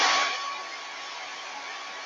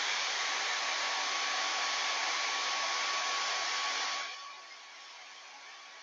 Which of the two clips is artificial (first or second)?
second